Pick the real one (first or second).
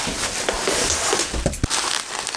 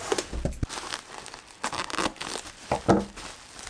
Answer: second